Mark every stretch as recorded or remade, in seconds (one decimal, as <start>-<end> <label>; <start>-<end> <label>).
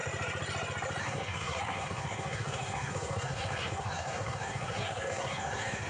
0.0-1.0 recorded; 1.0-5.9 remade